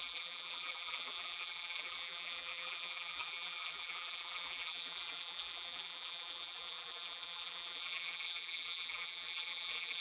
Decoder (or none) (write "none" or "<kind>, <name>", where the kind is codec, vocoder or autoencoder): vocoder, BigVGAN v2